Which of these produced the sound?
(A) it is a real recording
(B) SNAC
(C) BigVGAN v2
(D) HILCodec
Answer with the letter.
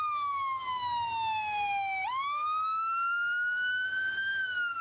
A